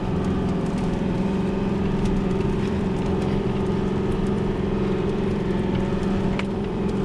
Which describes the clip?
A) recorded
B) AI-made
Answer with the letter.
B